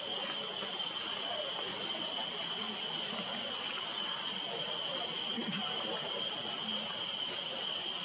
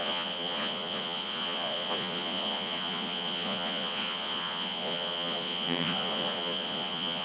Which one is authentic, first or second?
first